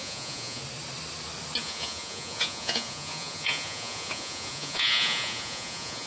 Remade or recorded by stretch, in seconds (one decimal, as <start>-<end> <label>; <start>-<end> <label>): 0.0-0.6 remade; 0.6-1.6 recorded; 1.6-6.1 remade